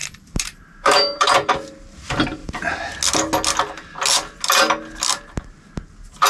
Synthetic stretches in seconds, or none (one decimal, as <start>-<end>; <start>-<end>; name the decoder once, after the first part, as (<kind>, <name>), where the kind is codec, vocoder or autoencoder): 0.0-1.5 (vocoder, BigVGAN v2); 2.4-3.0